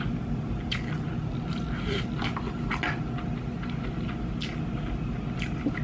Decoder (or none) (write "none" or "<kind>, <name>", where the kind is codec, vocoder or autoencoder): none